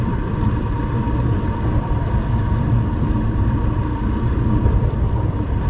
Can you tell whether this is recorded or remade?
remade